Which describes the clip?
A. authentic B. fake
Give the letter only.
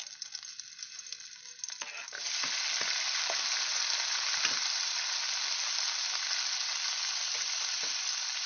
A